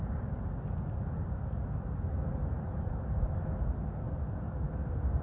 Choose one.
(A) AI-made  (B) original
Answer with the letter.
B